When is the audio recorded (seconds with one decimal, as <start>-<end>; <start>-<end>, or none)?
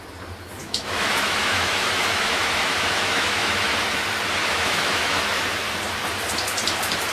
0.0-0.6; 3.7-4.4; 5.4-7.1